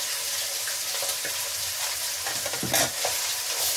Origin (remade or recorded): recorded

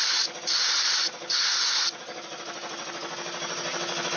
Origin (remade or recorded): recorded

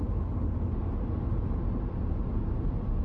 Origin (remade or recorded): recorded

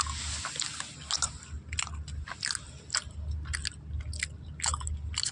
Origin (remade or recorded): recorded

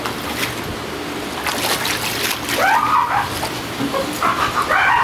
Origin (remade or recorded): recorded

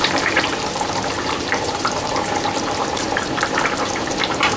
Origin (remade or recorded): remade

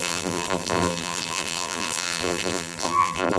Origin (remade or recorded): remade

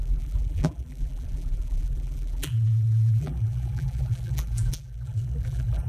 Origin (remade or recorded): remade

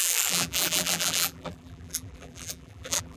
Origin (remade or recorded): remade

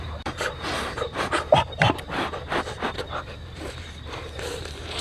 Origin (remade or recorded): remade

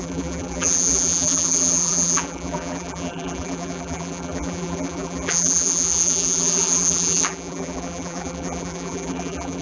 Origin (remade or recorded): remade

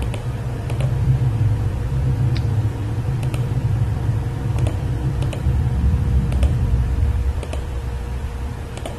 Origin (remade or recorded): remade